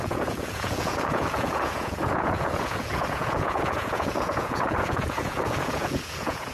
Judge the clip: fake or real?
fake